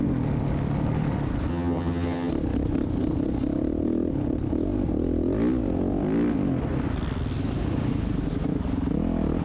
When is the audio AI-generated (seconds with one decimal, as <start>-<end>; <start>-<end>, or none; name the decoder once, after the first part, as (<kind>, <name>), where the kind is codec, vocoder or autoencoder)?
1.5-2.3 (vocoder, HiFi-GAN)